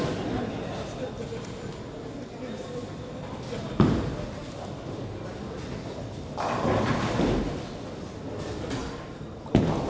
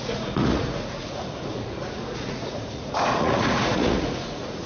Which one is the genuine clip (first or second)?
first